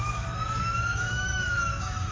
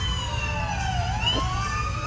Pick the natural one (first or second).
second